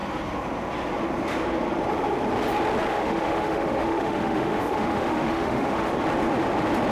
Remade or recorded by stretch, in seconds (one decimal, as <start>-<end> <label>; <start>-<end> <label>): 0.0-2.9 recorded; 2.9-5.9 remade; 5.9-6.9 recorded